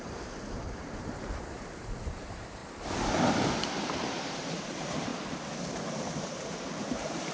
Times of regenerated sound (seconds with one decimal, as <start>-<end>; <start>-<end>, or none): 0.0-2.6; 3.5-5.1; 5.9-7.3